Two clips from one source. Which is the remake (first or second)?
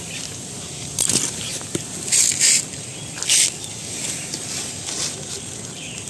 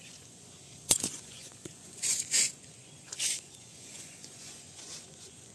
second